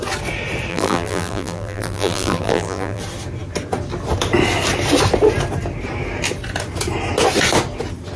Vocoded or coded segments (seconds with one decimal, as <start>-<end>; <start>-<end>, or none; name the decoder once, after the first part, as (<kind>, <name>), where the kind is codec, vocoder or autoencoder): 0.7-3.0 (vocoder, BigVGAN v2)